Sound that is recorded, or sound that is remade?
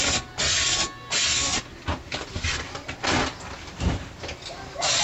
recorded